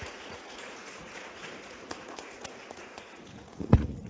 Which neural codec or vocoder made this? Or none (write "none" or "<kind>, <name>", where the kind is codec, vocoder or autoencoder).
vocoder, Vocos